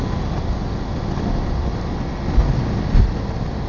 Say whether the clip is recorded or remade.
recorded